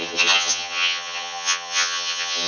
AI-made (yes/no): yes